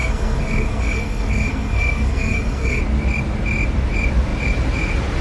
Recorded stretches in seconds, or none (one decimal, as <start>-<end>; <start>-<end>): 2.8-5.2